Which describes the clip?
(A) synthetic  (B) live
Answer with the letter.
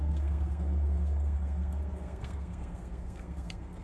A